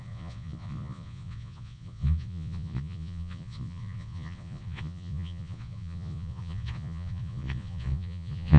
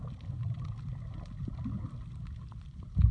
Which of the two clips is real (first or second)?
second